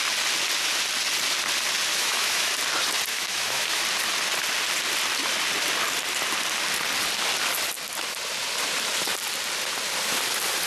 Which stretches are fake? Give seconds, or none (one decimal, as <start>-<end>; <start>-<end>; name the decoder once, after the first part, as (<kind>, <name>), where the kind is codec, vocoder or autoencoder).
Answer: 1.9-2.5 (autoencoder, DAC-VAE); 3.1-3.8